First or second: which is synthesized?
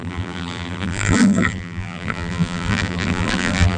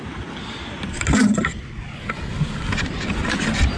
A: first